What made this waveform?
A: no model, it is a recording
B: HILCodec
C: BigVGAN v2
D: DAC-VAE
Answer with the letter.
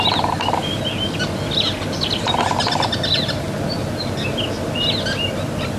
A